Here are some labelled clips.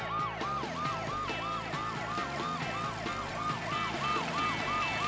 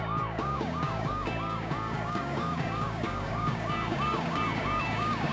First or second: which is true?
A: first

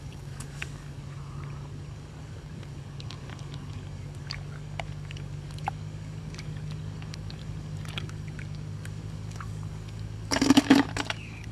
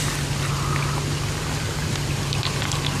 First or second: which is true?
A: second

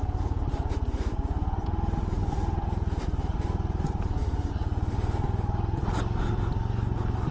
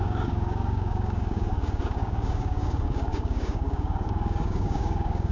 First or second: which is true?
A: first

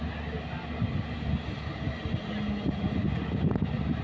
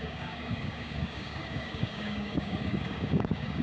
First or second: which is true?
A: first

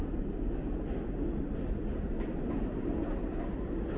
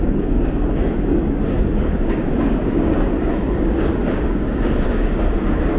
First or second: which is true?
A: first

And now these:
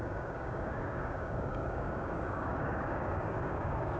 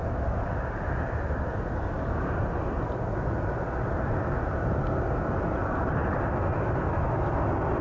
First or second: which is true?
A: second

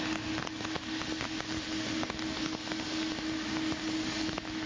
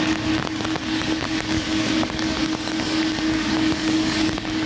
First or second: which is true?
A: first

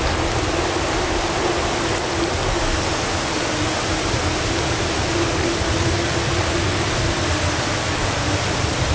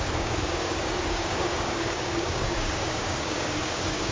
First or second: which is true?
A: first